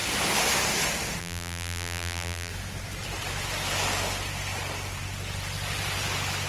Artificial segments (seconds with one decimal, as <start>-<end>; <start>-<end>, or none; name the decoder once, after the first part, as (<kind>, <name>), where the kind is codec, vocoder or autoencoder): 1.2-2.5 (vocoder, BigVGAN v2)